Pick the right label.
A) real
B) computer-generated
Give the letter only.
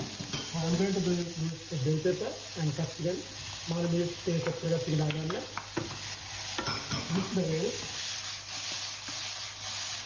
A